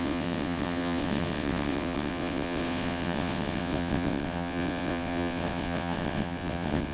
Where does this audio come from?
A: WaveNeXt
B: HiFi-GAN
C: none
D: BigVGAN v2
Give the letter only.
A